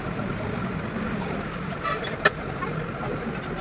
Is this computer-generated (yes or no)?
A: no